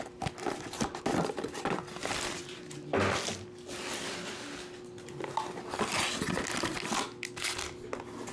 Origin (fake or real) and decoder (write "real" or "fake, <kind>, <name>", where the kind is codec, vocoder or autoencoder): real